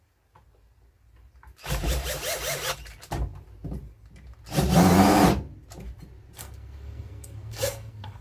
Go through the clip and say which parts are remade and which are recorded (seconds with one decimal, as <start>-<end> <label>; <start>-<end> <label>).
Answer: 0.0-6.4 recorded; 6.4-8.2 remade